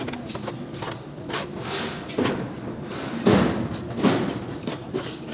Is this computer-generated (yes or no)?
no